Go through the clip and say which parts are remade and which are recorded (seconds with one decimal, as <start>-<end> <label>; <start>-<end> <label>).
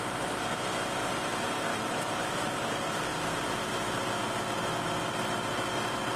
0.0-1.7 recorded; 1.7-2.7 remade; 2.7-6.2 recorded